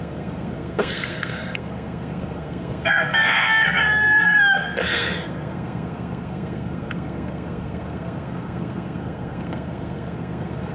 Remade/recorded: remade